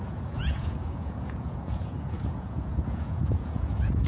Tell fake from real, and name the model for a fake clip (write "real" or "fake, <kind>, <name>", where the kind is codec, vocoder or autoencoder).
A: fake, vocoder, Vocos